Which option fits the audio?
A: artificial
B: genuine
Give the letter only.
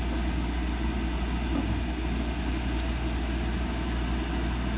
B